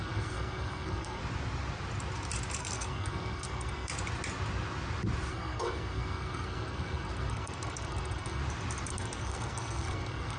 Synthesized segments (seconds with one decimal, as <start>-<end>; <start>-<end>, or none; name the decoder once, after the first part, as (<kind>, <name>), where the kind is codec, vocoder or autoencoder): 0.0-1.2 (codec, SNAC); 2.6-3.9; 5.3-8.4; 8.9-10.4